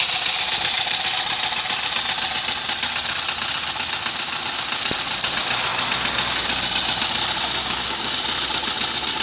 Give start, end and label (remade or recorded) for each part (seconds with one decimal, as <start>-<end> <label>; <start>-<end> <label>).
0.0-7.6 recorded; 7.6-8.2 remade; 8.2-9.2 recorded